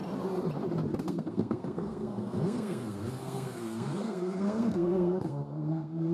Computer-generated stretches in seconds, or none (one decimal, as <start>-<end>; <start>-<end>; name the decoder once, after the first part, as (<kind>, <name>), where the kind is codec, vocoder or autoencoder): 1.0-6.1 (codec, SNAC)